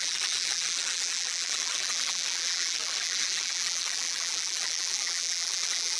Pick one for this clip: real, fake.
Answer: fake